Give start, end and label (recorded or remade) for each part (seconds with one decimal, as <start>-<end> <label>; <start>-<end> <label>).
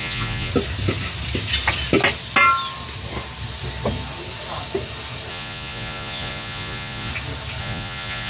0.0-0.5 remade; 0.5-5.3 recorded; 5.3-7.1 remade; 7.1-7.6 recorded; 7.6-8.3 remade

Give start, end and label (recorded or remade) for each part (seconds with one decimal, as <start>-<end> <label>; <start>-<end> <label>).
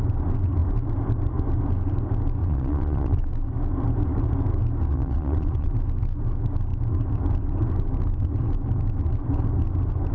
0.0-2.4 recorded; 2.4-3.2 remade; 3.2-4.9 recorded; 4.9-5.7 remade; 5.7-10.1 recorded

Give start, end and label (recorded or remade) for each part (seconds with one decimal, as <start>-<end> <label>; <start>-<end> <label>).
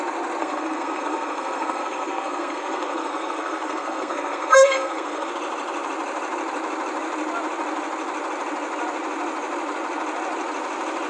0.0-0.4 recorded; 0.4-5.3 remade; 5.3-11.1 recorded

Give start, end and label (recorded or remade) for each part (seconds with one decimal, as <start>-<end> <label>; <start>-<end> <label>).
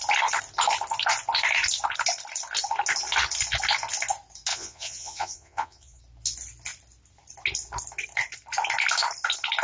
0.0-4.5 recorded; 4.5-6.0 remade; 6.0-9.6 recorded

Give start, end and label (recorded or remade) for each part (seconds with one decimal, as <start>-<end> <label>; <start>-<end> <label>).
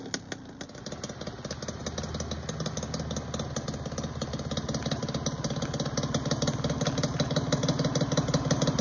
0.0-8.8 recorded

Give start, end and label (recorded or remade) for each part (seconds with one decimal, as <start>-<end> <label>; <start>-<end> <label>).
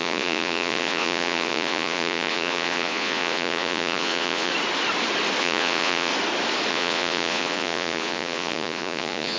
0.0-4.5 remade; 4.5-5.4 recorded; 5.4-6.1 remade; 6.1-6.7 recorded; 6.7-9.4 remade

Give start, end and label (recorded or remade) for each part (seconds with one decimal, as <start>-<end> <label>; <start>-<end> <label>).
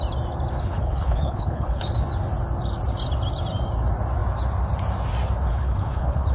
0.0-0.6 recorded; 0.6-1.8 remade; 1.8-5.5 recorded; 5.5-6.3 remade